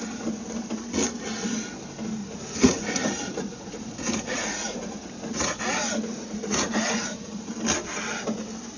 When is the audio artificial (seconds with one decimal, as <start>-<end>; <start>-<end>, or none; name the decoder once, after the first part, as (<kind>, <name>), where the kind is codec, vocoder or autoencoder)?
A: 2.2-5.6 (vocoder, Vocos); 6.1-7.5